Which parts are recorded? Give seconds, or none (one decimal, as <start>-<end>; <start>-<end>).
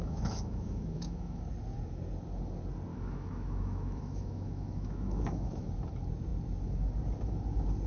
1.4-2.9; 5.7-7.9